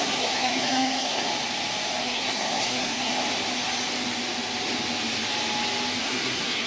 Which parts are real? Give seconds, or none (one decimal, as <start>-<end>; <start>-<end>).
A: 1.3-2.0; 3.1-6.0